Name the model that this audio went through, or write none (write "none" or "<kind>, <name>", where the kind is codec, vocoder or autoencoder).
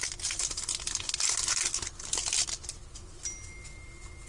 none